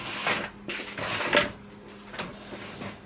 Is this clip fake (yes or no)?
no